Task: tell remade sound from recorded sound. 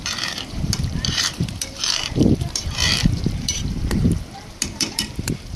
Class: remade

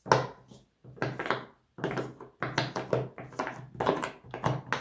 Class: recorded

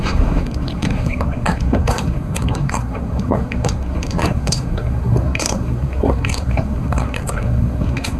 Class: remade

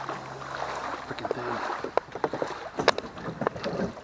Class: recorded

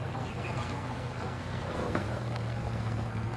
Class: remade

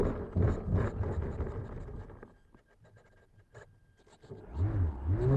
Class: recorded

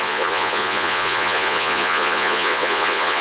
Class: remade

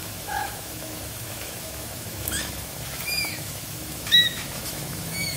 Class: remade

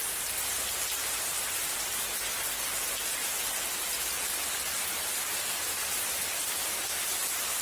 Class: recorded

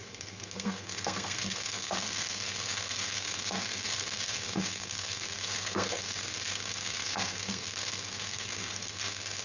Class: remade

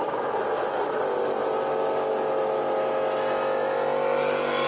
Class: recorded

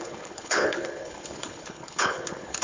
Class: remade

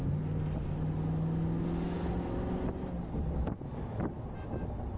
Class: recorded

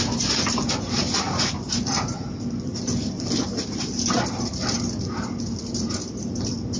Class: recorded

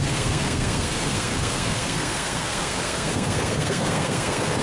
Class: remade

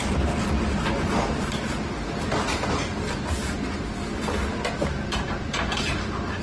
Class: recorded